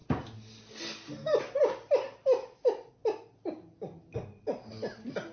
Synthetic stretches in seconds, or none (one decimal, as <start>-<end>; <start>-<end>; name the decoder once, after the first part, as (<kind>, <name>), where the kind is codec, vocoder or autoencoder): none